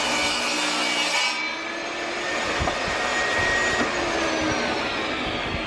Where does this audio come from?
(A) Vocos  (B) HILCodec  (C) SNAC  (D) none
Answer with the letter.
D